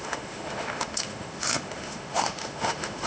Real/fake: fake